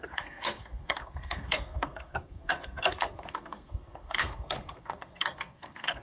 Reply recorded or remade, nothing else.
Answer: remade